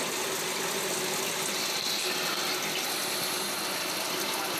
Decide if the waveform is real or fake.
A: real